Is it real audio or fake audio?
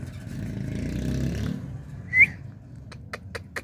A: real